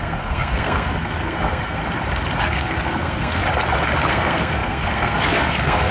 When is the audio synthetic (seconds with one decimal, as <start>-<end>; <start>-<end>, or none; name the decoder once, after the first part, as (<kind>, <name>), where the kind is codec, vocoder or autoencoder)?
0.0-1.8 (codec, SNAC); 2.4-3.4; 4.1-5.9